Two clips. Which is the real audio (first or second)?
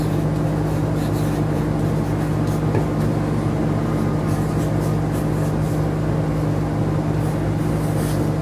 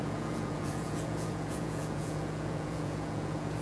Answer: first